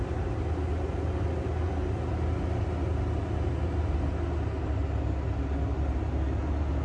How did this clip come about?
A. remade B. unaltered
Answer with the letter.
B